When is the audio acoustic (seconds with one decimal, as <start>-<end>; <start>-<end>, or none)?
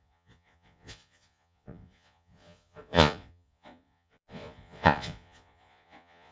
none